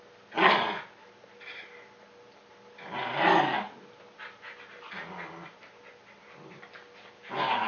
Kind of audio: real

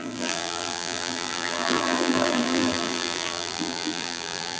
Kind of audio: fake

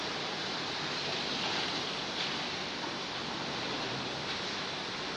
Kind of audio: real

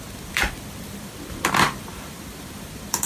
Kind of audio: fake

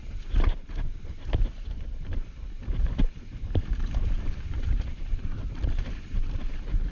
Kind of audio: fake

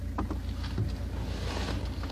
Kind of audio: real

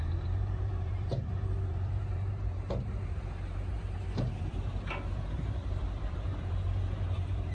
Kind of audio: fake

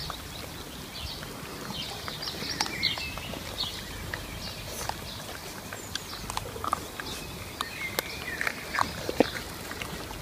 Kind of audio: real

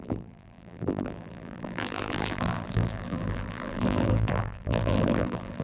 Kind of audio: fake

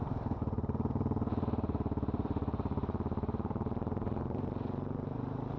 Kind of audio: fake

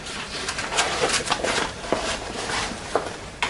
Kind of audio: fake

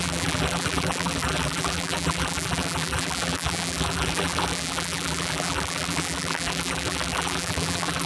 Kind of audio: fake